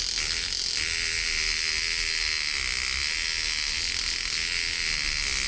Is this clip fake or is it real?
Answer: real